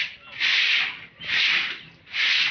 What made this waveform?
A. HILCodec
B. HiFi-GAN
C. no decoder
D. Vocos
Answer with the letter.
C